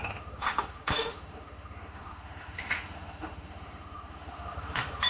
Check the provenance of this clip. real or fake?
fake